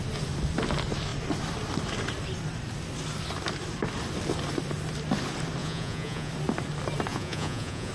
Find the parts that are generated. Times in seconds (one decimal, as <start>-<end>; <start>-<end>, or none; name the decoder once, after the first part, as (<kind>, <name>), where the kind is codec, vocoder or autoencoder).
5.6-6.3 (vocoder, Vocos); 7.1-7.9